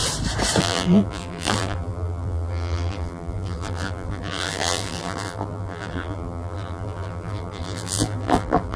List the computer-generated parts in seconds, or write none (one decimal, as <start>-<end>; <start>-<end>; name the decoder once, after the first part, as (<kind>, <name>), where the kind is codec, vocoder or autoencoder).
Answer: 0.6-8.8 (vocoder, BigVGAN v2)